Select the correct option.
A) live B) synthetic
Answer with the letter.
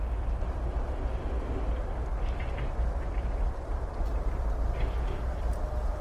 A